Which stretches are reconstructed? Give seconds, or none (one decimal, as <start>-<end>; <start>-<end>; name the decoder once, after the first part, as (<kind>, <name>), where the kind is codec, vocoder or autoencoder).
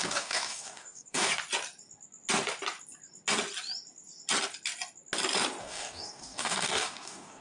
0.0-1.3 (codec, DAC); 5.6-7.4